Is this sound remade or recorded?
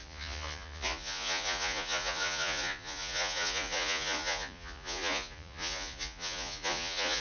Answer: remade